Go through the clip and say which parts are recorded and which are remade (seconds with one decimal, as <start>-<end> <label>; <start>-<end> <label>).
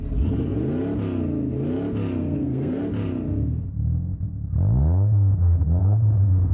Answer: 0.0-2.2 recorded; 2.2-2.8 remade; 2.8-5.8 recorded; 5.8-6.5 remade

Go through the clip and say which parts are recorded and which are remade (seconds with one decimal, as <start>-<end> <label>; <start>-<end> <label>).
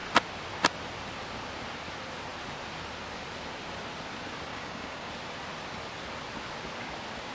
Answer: 0.0-4.5 recorded; 4.5-5.1 remade; 5.1-7.3 recorded